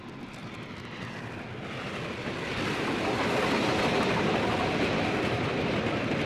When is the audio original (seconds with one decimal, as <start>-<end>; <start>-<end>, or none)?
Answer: 0.0-6.3